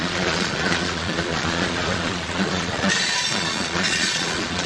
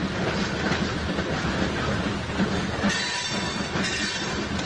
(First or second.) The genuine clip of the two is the second